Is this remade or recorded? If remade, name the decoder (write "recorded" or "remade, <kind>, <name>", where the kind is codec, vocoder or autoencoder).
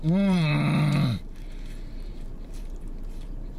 remade, vocoder, BigVGAN v2